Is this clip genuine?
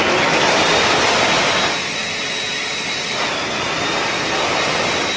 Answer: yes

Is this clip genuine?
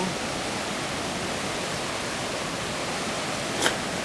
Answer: yes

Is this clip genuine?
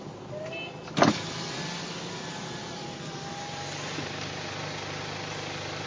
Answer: yes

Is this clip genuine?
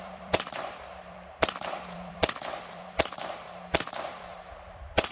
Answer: no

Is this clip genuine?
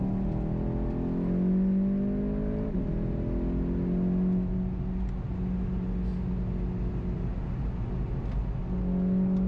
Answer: yes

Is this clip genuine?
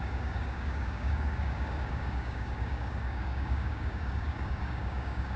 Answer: no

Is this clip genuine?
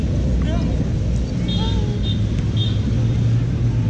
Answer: yes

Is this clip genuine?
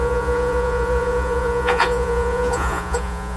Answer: no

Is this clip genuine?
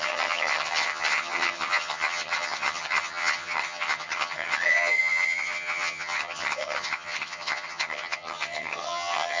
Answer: no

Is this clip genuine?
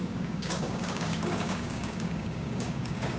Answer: no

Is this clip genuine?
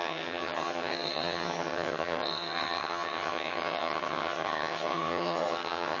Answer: no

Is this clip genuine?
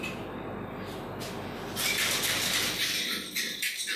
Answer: yes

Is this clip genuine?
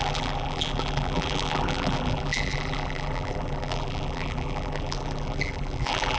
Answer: no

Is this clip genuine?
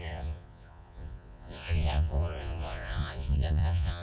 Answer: no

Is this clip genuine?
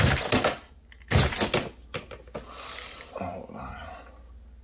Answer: yes